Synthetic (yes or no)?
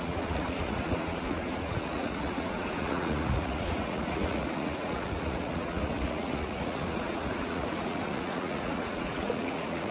yes